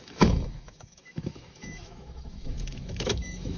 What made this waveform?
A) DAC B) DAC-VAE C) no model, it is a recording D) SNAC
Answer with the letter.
B